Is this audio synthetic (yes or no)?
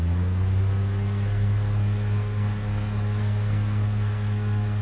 yes